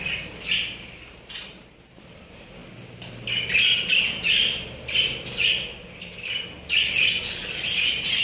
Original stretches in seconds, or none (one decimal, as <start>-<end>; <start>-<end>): 0.0-8.2